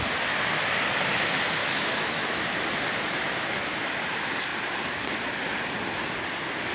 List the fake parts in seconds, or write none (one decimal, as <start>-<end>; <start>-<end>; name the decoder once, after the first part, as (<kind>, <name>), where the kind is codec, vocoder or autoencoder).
1.6-2.4 (autoencoder, DAC-VAE)